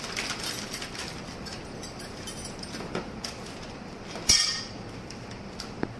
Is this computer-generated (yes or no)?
yes